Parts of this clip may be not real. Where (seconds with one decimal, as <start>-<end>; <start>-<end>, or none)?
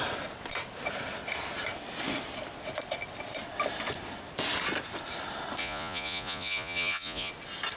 5.6-7.3